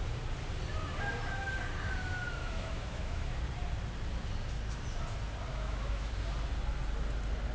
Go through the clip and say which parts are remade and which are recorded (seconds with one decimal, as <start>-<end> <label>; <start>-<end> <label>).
0.0-2.4 recorded; 2.4-3.4 remade; 3.4-5.5 recorded; 5.5-6.1 remade; 6.1-7.5 recorded